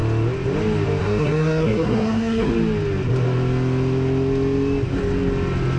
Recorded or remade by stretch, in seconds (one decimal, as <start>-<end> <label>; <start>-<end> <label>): 0.0-1.0 recorded; 1.0-2.5 remade; 2.5-5.8 recorded